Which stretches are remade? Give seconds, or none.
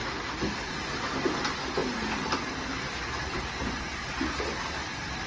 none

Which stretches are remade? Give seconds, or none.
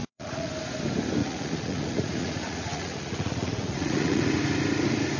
0.0-0.5; 1.2-4.3